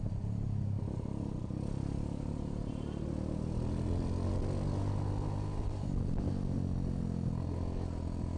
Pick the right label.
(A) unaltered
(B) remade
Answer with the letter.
A